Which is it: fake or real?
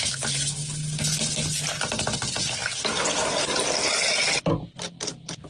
real